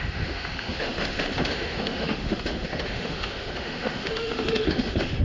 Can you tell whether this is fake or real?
fake